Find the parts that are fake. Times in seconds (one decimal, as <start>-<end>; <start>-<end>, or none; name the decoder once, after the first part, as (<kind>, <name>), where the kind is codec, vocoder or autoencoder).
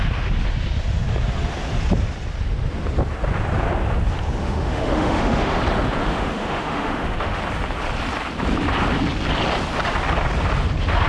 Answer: 4.4-5.6 (autoencoder, DAC-VAE); 6.0-7.4